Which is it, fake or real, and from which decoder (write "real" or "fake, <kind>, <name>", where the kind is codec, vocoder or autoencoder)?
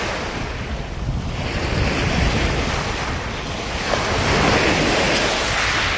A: real